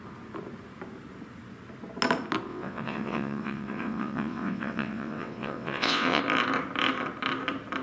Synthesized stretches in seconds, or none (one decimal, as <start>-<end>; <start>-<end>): 2.5-6.2